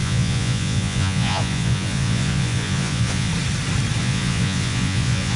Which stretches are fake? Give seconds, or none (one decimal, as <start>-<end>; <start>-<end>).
0.0-3.3; 4.0-5.4

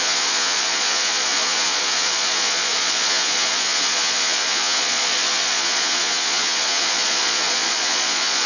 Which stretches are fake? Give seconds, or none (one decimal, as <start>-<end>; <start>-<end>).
0.0-8.5

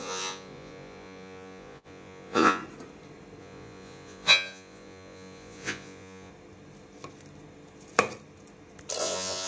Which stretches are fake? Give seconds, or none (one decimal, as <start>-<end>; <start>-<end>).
0.0-2.6; 3.4-6.3; 9.0-9.5

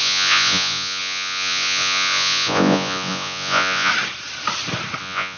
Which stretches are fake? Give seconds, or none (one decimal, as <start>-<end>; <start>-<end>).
0.0-3.9; 5.0-5.4

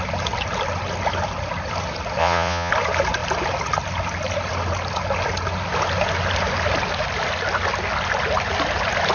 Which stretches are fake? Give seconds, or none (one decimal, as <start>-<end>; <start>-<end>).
2.2-2.7

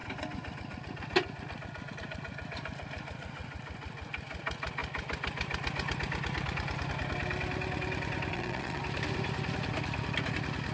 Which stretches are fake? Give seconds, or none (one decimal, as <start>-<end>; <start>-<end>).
8.3-8.8

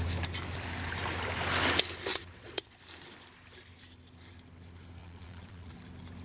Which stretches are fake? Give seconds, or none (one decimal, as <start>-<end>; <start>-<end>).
2.1-2.8; 5.0-5.7

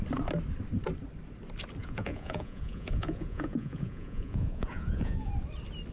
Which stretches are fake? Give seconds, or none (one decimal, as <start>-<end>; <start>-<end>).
1.8-5.3